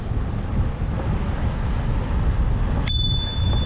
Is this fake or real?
real